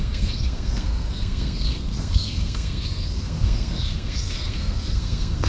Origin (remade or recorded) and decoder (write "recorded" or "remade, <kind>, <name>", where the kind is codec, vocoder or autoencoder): remade, codec, SNAC